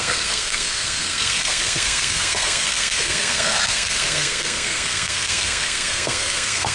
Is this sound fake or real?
fake